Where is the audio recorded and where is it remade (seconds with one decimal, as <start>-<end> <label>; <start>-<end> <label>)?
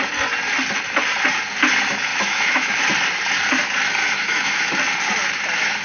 0.0-2.1 recorded; 2.1-2.8 remade; 2.8-4.0 recorded; 4.0-4.7 remade; 4.7-5.8 recorded